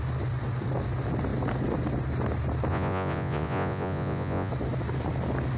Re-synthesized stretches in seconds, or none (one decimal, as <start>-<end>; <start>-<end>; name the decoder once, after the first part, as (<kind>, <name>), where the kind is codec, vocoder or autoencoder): 2.7-4.5 (vocoder, Vocos)